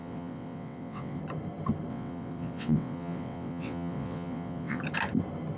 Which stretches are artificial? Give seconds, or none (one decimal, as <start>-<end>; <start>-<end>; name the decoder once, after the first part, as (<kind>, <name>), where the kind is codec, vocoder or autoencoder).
0.0-1.2 (vocoder, WaveNeXt); 1.9-4.8

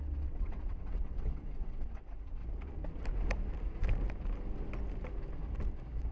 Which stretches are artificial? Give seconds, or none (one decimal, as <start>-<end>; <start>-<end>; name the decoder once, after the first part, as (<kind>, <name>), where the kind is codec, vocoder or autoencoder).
0.0-2.4 (vocoder, WaveNeXt)